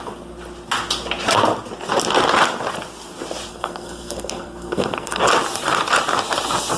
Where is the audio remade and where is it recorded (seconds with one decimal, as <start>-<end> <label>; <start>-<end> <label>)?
0.0-3.5 recorded; 3.5-5.2 remade; 5.2-6.8 recorded